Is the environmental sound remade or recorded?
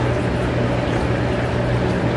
recorded